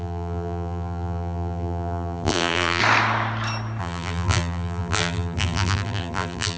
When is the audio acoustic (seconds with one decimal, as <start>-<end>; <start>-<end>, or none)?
2.8-3.8